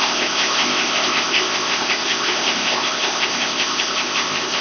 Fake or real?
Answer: fake